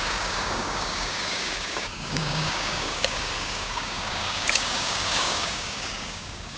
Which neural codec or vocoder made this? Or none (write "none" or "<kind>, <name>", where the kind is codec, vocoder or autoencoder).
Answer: codec, DAC